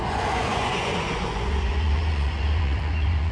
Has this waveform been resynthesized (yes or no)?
yes